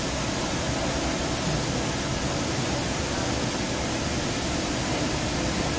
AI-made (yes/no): no